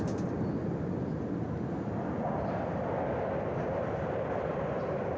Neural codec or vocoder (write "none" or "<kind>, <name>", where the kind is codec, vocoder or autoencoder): none